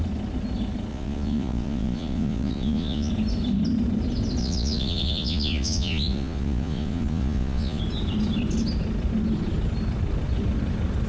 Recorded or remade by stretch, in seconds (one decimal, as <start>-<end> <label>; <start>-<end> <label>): 0.0-0.9 recorded; 0.9-3.1 remade; 3.1-4.4 recorded; 4.4-7.8 remade; 7.8-11.1 recorded